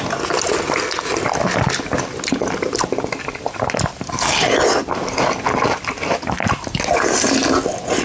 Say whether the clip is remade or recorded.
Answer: recorded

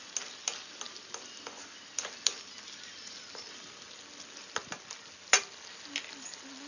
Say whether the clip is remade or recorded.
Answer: recorded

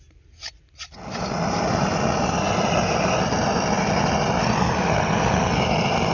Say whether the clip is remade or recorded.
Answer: recorded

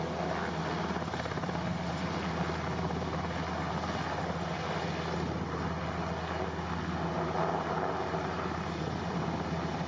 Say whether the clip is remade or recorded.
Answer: recorded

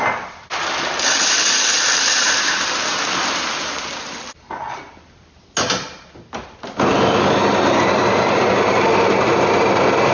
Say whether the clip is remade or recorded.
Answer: recorded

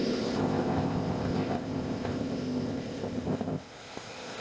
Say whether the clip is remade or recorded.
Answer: remade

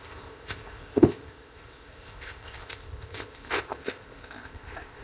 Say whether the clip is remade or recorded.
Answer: remade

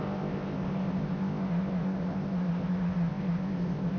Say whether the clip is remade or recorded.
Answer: remade